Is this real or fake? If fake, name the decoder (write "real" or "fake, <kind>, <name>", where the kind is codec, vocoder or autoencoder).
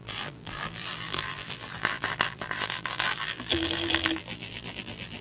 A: fake, vocoder, BigVGAN v2